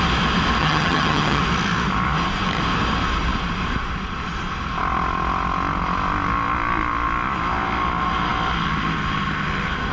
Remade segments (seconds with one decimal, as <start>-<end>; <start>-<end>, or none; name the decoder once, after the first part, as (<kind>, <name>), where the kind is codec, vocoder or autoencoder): 0.6-1.4 (vocoder, HiFi-GAN)